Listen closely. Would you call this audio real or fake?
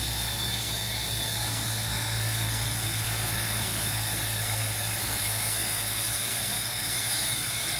fake